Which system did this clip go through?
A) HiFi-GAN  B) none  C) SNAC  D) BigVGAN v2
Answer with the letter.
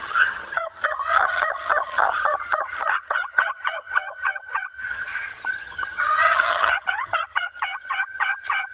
A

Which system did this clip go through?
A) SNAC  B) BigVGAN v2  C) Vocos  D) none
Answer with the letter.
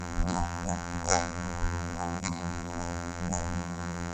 B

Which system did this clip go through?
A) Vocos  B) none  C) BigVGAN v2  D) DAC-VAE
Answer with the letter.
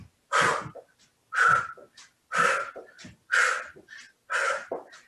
B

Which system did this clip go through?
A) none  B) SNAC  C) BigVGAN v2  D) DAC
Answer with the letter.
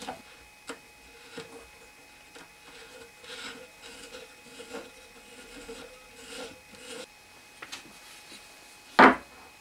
A